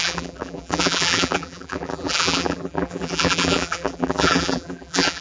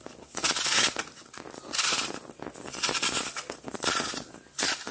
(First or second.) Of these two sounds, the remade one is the first